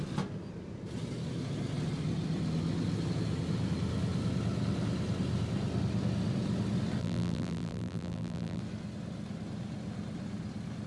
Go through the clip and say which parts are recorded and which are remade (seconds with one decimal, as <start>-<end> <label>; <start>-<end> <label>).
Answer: 0.0-7.0 recorded; 7.0-8.6 remade; 8.6-10.9 recorded